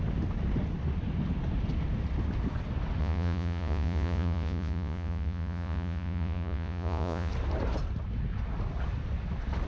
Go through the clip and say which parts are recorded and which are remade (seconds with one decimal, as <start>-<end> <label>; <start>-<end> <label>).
0.0-3.0 recorded; 3.0-7.3 remade; 7.3-9.7 recorded